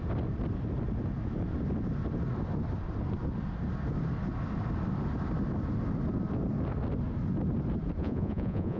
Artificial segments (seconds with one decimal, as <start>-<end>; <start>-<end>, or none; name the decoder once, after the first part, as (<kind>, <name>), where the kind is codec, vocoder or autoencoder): 8.0-8.8 (vocoder, Vocos)